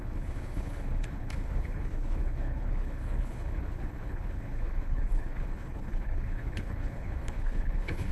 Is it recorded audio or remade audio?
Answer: remade